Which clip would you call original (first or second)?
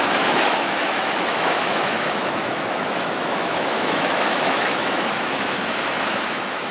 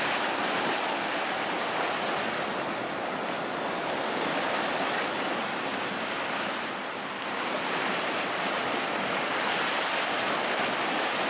second